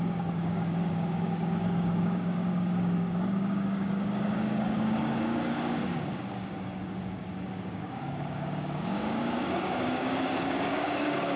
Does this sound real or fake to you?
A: fake